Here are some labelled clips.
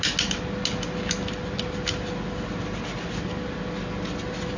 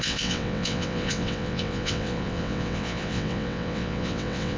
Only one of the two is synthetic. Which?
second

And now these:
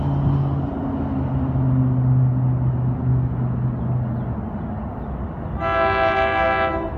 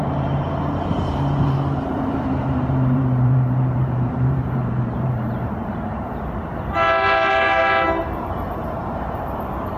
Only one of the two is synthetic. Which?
second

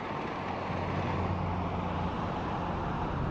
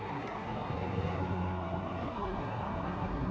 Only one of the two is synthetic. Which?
second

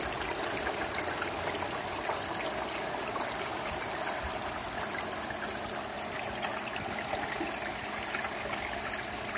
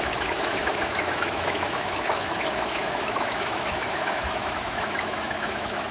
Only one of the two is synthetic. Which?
second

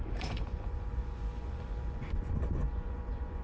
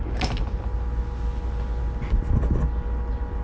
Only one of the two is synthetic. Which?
first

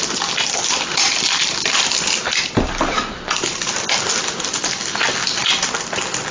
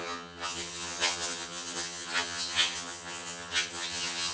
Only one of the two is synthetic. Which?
second